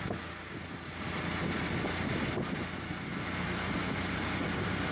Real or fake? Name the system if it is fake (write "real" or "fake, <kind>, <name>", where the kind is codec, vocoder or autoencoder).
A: real